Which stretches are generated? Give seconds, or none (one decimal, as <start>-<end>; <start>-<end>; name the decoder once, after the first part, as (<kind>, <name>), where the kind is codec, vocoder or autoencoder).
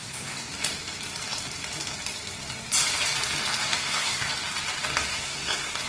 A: 0.0-0.5 (codec, SNAC); 3.6-4.3; 5.1-5.9